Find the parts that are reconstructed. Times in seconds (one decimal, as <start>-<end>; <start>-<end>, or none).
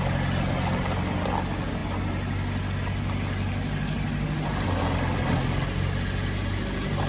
none